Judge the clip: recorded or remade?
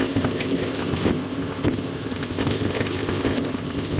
remade